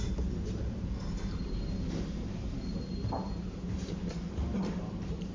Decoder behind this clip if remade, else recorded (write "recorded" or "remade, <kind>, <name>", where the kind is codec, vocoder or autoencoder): remade, vocoder, BigVGAN v2